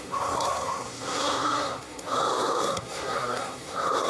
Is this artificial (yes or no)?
yes